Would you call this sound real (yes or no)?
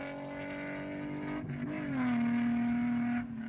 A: yes